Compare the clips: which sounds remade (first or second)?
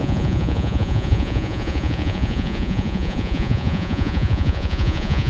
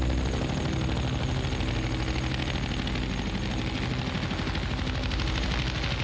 first